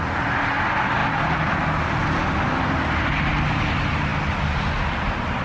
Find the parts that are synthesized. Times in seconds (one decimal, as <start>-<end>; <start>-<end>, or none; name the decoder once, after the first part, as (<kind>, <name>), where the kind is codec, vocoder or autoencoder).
none